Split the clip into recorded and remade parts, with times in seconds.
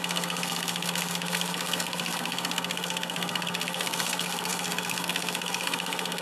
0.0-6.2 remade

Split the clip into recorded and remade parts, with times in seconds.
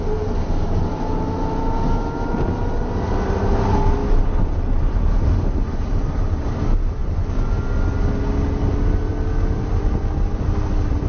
0.0-4.0 recorded; 4.0-6.6 remade; 6.6-11.1 recorded